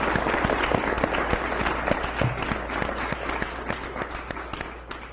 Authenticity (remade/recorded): recorded